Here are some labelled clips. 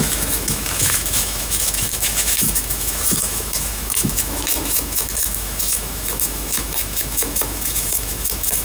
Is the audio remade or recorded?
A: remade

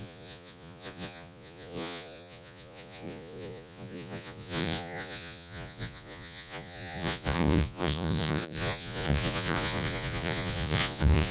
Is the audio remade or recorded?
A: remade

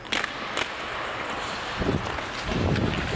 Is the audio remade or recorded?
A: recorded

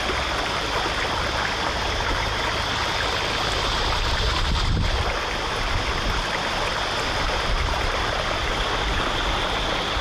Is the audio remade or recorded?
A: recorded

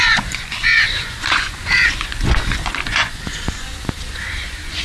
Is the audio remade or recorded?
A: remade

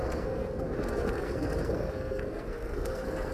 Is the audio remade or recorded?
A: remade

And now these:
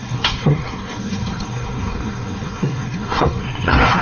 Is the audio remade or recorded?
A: remade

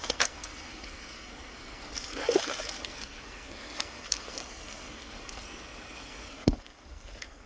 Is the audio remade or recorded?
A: remade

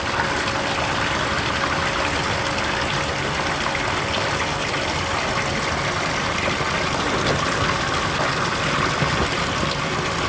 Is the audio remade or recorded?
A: recorded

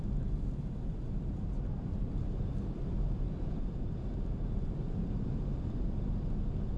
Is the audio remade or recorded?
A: recorded